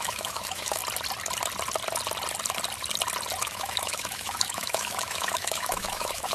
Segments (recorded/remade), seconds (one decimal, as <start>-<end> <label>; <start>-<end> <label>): 0.0-0.8 remade; 0.8-3.4 recorded; 3.4-6.3 remade